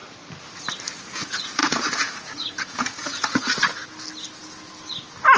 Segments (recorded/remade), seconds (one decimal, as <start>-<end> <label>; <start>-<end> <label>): 0.0-1.0 recorded; 1.0-3.8 remade; 3.8-5.4 recorded